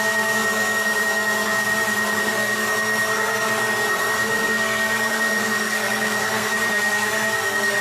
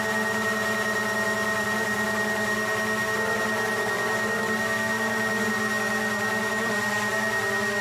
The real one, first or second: second